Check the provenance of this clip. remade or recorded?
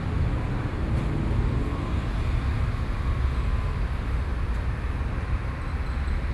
recorded